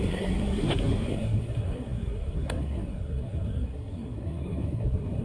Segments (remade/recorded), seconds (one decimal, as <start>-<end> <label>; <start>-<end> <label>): 0.0-5.2 remade